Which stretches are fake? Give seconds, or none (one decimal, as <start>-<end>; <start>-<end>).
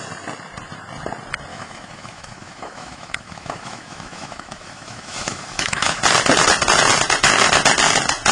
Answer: 1.5-6.0